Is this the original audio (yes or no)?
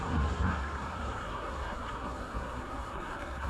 no